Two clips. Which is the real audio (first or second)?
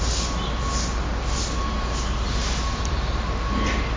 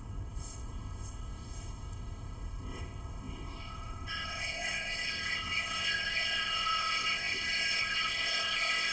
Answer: first